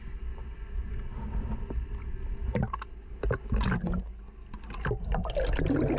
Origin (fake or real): real